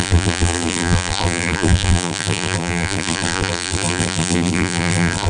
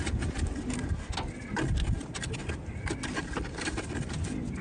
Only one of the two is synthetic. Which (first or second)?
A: first